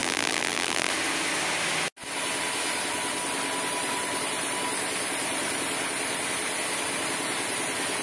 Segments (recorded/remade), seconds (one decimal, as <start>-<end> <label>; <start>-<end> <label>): 0.0-0.9 remade; 0.9-8.0 recorded